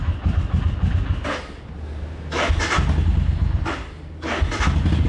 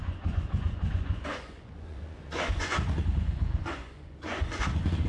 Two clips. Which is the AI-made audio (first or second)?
second